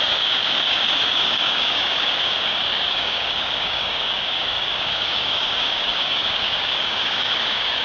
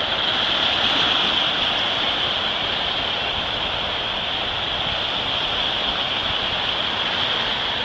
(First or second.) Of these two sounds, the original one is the second